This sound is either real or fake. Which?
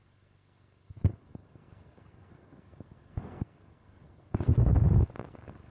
fake